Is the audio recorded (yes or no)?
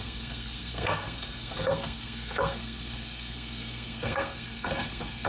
no